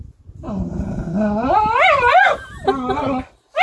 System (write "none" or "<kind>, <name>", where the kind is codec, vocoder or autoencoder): none